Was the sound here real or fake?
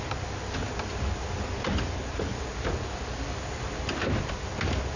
real